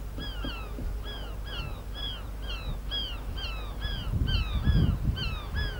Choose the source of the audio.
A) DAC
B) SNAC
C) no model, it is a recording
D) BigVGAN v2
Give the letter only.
C